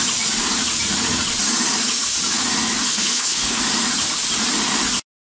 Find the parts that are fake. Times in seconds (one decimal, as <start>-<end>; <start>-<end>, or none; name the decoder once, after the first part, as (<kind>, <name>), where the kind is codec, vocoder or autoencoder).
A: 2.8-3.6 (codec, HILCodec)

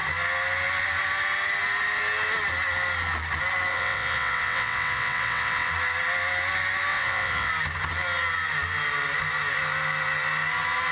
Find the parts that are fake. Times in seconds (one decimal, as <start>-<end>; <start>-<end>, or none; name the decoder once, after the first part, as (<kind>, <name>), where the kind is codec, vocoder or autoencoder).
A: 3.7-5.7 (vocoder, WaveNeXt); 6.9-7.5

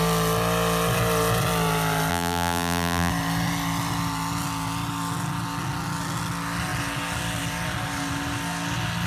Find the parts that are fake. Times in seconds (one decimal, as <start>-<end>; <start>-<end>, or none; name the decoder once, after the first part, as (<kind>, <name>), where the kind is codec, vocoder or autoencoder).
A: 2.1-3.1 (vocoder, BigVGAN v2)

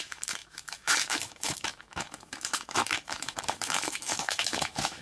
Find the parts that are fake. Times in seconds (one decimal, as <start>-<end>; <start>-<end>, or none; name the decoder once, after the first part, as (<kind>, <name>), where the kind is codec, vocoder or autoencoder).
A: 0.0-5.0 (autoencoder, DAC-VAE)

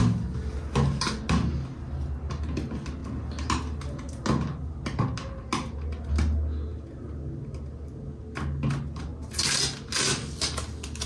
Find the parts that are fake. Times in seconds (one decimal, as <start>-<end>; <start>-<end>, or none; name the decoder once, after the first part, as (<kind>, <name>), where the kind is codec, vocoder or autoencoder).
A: none